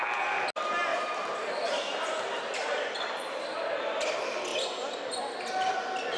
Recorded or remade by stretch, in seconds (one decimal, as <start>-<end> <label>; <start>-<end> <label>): 0.0-0.9 recorded; 0.9-4.0 remade; 4.0-6.2 recorded